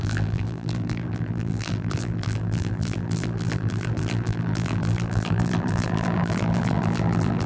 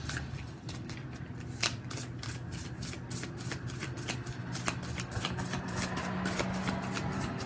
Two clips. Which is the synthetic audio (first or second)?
first